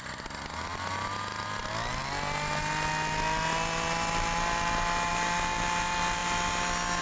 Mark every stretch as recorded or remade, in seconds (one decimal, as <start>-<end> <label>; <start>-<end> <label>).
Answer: 0.0-7.0 recorded

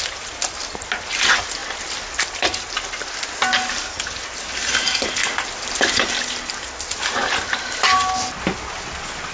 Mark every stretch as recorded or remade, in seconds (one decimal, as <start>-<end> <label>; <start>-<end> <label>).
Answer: 0.0-9.3 recorded

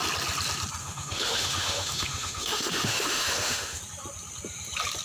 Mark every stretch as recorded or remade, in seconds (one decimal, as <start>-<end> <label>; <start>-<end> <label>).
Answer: 0.0-0.8 recorded; 0.8-3.8 remade; 3.8-5.0 recorded

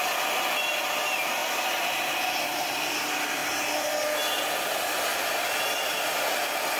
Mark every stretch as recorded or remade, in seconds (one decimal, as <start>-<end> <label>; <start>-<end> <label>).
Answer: 0.0-6.8 recorded

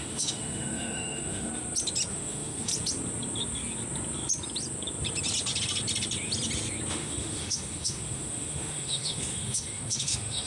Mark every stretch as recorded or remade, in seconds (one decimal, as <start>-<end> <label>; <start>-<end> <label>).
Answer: 0.0-1.5 remade; 1.5-2.1 recorded; 2.1-2.7 remade; 2.7-6.9 recorded; 6.9-10.5 remade

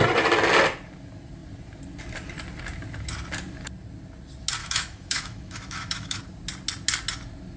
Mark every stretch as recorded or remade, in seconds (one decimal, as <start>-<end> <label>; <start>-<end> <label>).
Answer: 0.0-4.6 recorded; 4.6-6.2 remade; 6.2-7.6 recorded